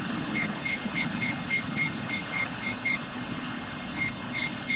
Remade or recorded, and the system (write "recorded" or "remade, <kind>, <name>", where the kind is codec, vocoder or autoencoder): remade, codec, HILCodec